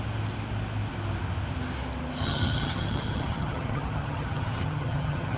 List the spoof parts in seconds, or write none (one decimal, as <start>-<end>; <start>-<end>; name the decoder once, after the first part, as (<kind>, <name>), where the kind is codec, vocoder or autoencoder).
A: 2.2-5.4 (vocoder, HiFi-GAN)